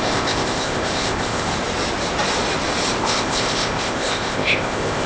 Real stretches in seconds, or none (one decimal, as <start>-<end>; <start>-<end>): 1.5-3.0